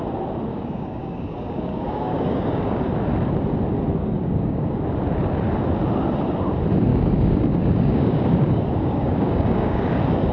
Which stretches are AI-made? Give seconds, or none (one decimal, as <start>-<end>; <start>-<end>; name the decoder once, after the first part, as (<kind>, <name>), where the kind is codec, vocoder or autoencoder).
0.5-2.8 (codec, DAC); 4.0-4.9; 6.9-9.9